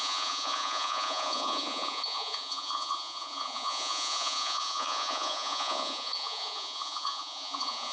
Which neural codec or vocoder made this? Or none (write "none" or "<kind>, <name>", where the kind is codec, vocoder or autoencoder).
vocoder, Vocos